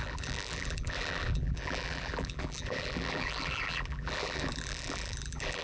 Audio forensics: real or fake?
fake